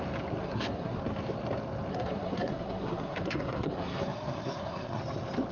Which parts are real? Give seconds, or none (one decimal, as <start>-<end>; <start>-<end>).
0.0-0.4; 1.0-1.9; 5.0-5.5